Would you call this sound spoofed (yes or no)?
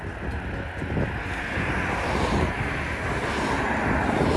no